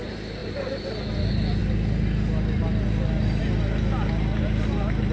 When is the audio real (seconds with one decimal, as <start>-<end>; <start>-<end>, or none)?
0.0-0.4; 1.1-5.1